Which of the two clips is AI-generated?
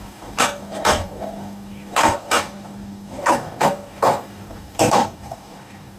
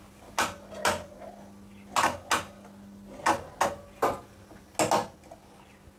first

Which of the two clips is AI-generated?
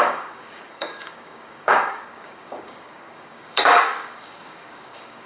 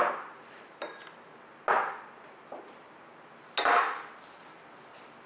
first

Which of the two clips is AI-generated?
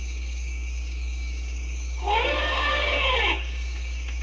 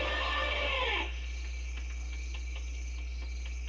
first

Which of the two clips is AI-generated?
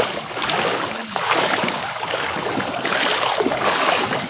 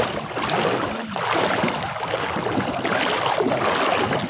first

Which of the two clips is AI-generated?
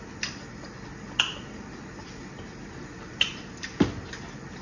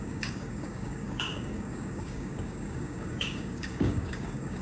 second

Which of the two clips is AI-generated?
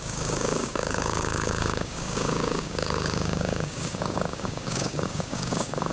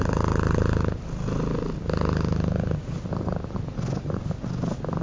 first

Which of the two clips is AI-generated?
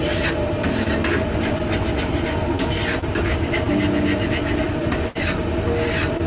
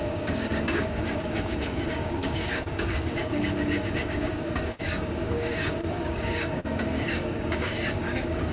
second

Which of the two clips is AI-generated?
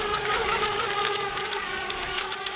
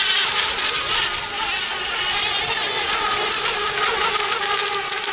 first